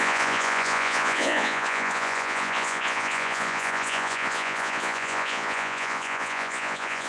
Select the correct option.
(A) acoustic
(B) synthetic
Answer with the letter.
B